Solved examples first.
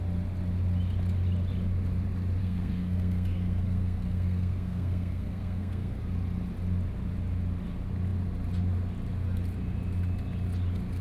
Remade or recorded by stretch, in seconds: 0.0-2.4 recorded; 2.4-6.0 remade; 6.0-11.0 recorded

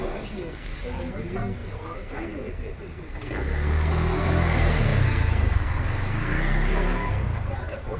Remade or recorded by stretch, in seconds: 0.0-8.0 remade

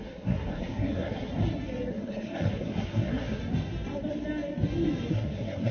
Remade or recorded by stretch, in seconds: 0.0-1.3 remade; 1.3-1.9 recorded; 1.9-3.4 remade; 3.4-5.1 recorded; 5.1-5.7 remade

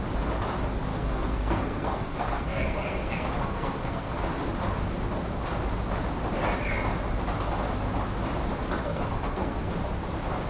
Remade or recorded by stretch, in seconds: 0.0-0.9 recorded; 0.9-4.2 remade; 4.2-8.8 recorded; 8.8-9.7 remade; 9.7-10.5 recorded